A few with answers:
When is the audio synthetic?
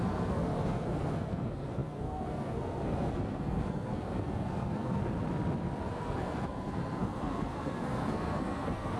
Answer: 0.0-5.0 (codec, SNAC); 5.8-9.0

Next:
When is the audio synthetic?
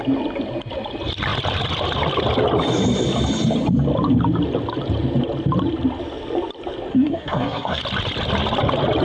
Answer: 6.9-7.8 (codec, SNAC)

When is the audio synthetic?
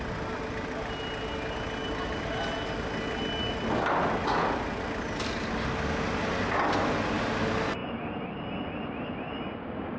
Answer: none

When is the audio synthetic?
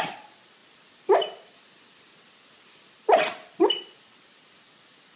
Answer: none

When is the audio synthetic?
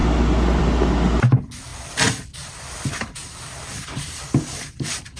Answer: 1.7-2.3 (vocoder, BigVGAN v2); 3.2-5.2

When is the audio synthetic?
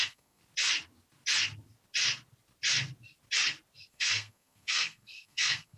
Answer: 0.0-0.4 (codec, SNAC); 3.9-5.8